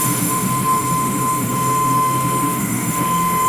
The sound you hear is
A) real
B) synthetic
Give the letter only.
B